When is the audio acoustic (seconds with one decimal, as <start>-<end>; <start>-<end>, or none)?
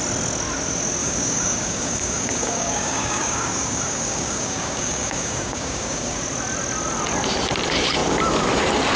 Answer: 0.0-1.0; 6.2-9.0